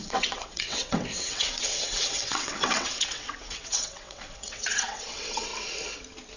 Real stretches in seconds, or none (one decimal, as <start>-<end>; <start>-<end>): 5.5-6.4